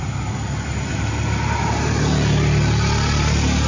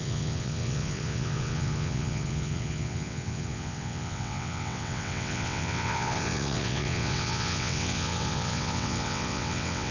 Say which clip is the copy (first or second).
second